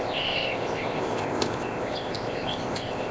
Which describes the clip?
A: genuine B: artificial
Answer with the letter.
B